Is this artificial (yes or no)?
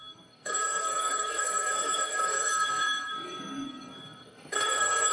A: yes